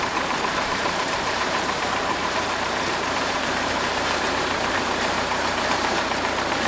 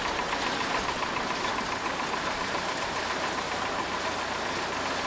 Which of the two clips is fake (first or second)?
first